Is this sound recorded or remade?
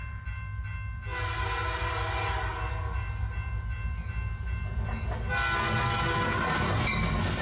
recorded